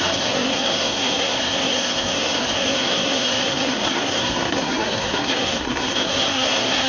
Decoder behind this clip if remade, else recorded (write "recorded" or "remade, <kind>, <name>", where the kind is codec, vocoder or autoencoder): remade, codec, SNAC